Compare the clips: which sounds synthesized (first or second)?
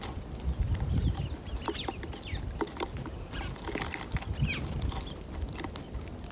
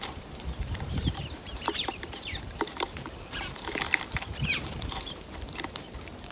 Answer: second